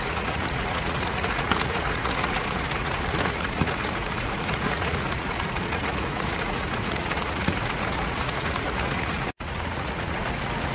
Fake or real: fake